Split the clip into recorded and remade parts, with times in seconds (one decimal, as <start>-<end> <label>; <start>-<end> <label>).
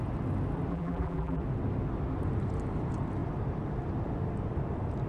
0.0-0.7 recorded; 0.7-1.4 remade; 1.4-5.1 recorded